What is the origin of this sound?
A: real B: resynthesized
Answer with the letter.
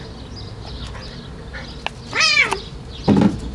A